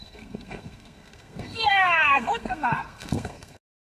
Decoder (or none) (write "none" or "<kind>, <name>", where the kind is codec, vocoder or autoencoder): codec, SNAC